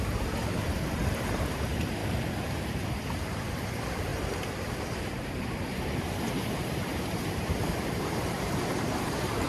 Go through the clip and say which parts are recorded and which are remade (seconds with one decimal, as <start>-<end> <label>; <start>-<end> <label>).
0.0-9.5 remade